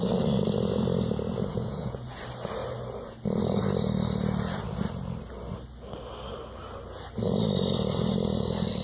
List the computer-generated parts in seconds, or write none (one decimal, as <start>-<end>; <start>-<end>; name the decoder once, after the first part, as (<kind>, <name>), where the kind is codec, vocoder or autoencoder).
1.5-2.2 (vocoder, Vocos)